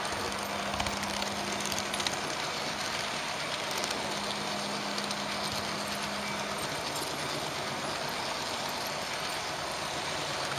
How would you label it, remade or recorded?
recorded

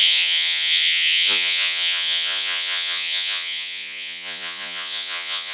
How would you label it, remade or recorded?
remade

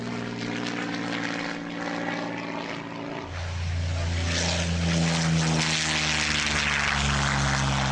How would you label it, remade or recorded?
recorded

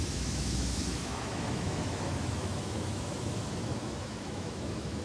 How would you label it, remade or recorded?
remade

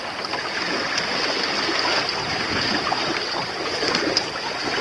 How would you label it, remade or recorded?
recorded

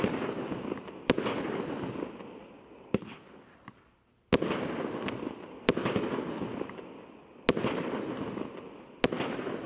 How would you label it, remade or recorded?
recorded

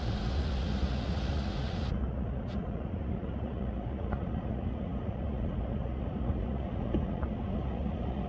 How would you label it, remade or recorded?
remade